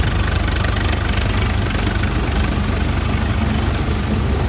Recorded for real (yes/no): yes